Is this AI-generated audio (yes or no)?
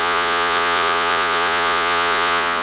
yes